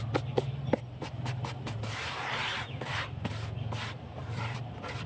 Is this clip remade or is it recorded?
recorded